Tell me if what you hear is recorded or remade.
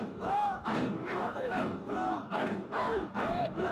remade